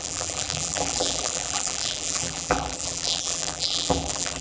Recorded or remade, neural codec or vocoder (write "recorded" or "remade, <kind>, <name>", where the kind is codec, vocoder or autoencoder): remade, vocoder, BigVGAN v2